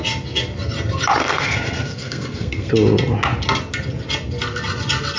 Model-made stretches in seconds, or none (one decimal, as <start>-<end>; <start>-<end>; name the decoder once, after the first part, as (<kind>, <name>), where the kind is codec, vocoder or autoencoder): 1.2-2.7 (codec, SNAC)